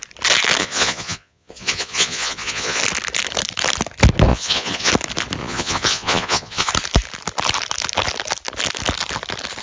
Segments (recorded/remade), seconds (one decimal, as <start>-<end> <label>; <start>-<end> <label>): 0.0-0.6 recorded; 0.6-2.8 remade; 2.8-4.3 recorded; 4.3-4.9 remade; 4.9-5.4 recorded; 5.4-6.7 remade; 6.7-9.6 recorded